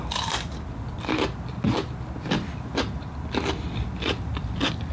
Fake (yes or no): no